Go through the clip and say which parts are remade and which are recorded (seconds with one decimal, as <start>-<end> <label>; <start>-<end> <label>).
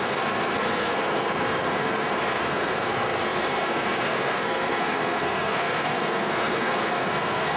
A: 0.0-7.6 remade